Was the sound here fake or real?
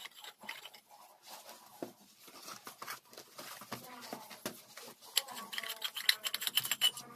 real